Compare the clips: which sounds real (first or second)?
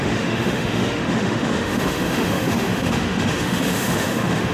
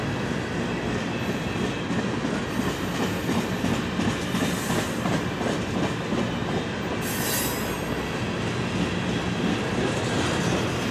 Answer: second